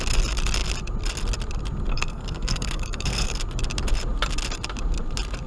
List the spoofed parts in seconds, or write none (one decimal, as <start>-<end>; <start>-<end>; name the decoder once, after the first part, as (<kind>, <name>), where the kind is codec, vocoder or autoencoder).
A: 1.9-3.4 (codec, SNAC)